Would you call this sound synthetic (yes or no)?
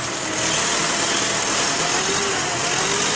no